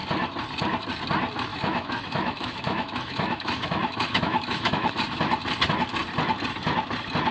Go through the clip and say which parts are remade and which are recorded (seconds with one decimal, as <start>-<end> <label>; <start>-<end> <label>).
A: 0.0-1.5 recorded; 1.5-4.9 remade; 4.9-7.3 recorded